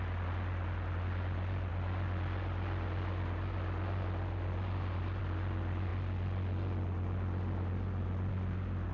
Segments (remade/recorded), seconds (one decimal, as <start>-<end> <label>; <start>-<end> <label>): 0.0-8.9 recorded